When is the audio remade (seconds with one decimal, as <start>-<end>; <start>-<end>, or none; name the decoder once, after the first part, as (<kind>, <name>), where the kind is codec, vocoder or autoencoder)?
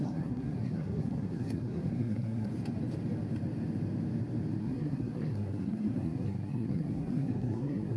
0.0-2.5 (codec, SNAC); 4.6-8.0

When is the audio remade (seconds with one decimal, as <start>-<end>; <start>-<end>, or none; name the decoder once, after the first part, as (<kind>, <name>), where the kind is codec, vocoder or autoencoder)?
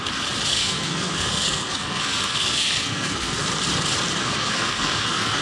0.5-3.4 (codec, SNAC); 4.2-5.4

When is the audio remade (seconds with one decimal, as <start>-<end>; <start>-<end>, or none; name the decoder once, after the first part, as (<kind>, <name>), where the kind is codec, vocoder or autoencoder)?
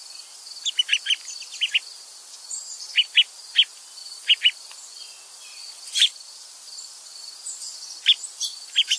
none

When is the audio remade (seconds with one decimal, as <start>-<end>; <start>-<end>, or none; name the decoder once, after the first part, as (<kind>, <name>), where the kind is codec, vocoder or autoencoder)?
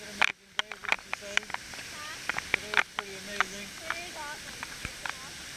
none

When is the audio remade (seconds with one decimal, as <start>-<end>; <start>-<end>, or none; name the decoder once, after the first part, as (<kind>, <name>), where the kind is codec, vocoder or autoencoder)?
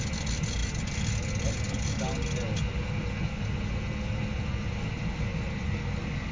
none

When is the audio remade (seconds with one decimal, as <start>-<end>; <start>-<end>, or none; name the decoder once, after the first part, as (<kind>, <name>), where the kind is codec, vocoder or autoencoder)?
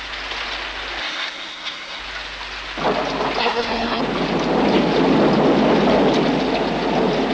1.0-2.0 (codec, SNAC); 3.4-4.0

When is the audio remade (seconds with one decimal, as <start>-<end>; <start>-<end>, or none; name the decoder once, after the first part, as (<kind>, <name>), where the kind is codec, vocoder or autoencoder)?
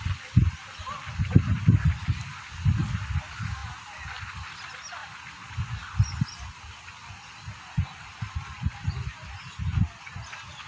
none